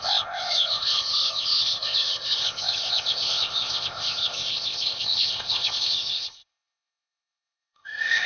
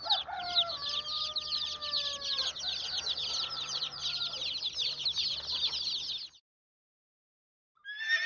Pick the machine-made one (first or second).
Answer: first